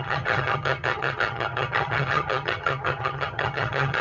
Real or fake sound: fake